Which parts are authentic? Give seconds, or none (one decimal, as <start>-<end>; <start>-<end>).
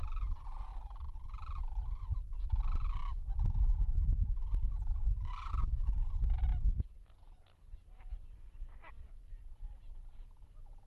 0.0-0.7; 2.1-4.1; 5.5-6.5; 8.0-8.7; 10.0-10.9